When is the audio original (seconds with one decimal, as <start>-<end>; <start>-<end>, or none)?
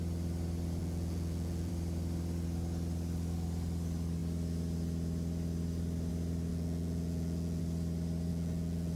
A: 0.0-0.8; 1.7-6.5; 7.6-8.3